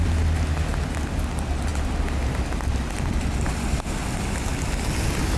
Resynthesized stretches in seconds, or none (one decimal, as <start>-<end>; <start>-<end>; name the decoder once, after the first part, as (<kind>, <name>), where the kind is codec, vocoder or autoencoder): none